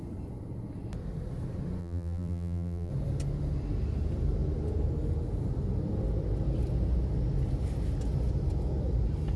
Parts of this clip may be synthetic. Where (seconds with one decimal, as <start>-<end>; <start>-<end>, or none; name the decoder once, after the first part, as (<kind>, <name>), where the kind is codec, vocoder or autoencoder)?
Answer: 1.8-2.9 (vocoder, BigVGAN v2)